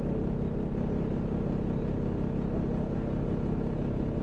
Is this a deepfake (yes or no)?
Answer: no